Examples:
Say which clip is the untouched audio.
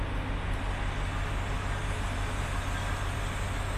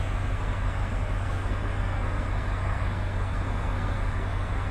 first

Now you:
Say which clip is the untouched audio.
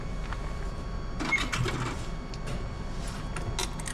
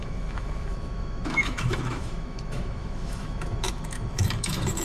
first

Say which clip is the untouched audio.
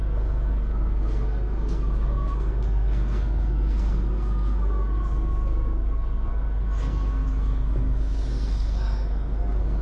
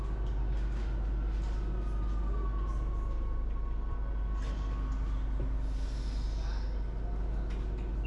second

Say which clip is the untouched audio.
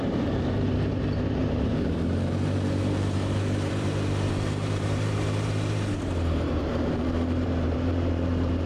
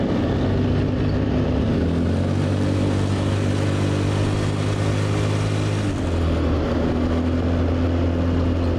second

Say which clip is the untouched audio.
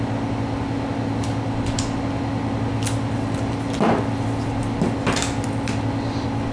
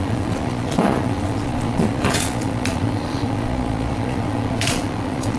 first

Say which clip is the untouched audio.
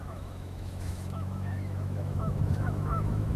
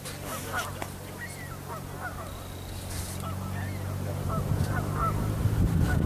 second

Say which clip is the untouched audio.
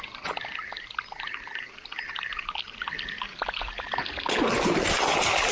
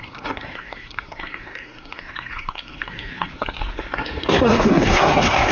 first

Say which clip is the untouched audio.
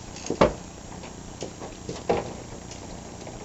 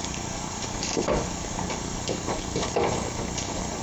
first